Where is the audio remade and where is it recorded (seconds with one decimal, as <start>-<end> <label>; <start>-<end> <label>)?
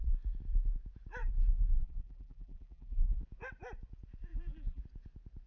0.0-1.2 recorded; 1.2-3.2 remade; 3.2-4.3 recorded; 4.3-4.8 remade; 4.8-5.5 recorded